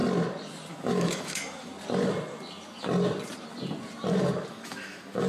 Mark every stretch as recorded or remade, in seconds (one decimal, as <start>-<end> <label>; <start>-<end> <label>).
0.0-0.7 recorded; 0.7-1.7 remade; 1.7-4.5 recorded; 4.5-5.3 remade